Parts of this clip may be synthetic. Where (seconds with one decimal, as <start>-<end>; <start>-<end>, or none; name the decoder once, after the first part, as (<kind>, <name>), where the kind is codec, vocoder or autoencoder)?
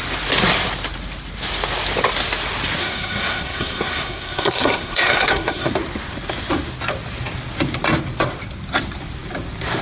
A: 2.8-5.7 (codec, SNAC)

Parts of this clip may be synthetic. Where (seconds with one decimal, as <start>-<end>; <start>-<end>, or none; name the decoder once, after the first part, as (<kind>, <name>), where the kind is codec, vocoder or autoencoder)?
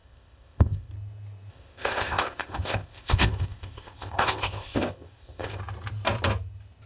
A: 0.0-0.9 (codec, ZipCodec); 1.5-5.6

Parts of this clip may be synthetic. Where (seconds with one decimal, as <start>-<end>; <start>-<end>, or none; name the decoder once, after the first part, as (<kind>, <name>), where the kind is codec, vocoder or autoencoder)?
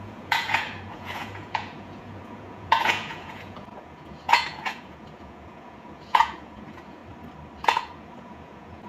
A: 0.0-7.0 (vocoder, Vocos); 7.6-8.9